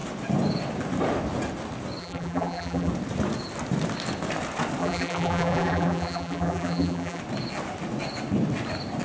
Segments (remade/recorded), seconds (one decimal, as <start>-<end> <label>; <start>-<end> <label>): 0.0-2.0 recorded; 2.0-2.9 remade; 2.9-4.8 recorded; 4.8-7.2 remade; 7.2-9.0 recorded